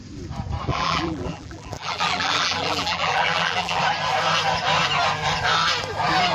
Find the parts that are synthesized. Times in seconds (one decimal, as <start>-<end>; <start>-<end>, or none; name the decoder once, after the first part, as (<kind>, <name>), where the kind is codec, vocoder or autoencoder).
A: 0.7-3.8 (vocoder, BigVGAN v2)